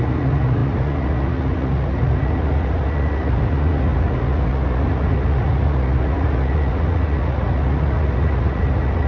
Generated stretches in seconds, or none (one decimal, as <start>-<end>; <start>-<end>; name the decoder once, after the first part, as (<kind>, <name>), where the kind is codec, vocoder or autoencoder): 0.0-9.1 (vocoder, Vocos)